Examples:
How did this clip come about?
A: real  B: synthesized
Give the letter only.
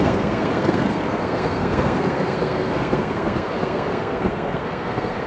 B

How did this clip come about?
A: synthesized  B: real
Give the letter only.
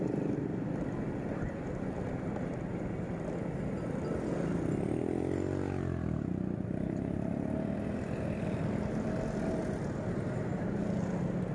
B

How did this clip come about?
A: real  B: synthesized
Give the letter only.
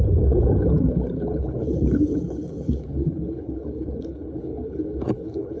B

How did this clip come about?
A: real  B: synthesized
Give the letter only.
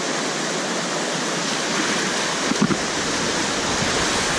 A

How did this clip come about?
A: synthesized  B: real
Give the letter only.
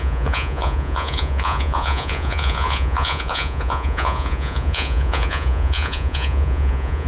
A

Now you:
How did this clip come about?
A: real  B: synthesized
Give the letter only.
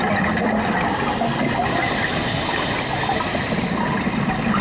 A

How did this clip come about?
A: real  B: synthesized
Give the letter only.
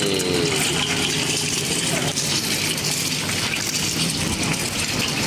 A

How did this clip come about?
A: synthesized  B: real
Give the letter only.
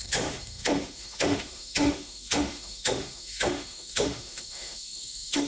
A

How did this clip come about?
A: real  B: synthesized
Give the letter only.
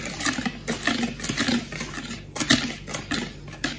A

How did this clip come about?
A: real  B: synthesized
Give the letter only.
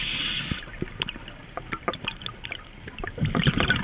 A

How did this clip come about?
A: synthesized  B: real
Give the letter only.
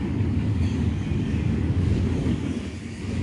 A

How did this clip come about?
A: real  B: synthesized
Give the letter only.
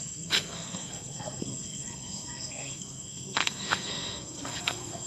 B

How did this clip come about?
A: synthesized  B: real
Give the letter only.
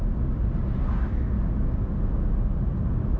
B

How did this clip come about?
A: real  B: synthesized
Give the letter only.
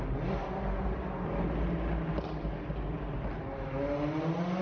A